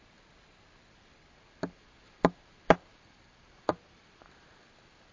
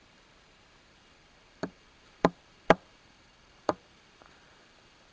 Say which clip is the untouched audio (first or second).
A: first